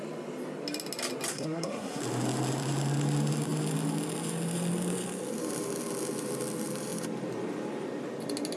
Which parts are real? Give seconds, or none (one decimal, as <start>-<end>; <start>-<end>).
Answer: 0.0-1.3; 2.0-8.6